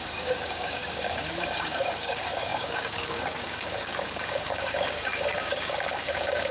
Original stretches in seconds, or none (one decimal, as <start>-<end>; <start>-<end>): none